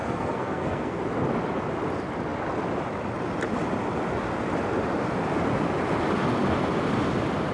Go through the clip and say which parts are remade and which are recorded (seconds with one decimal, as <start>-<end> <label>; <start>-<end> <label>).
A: 0.0-1.0 remade; 1.0-7.5 recorded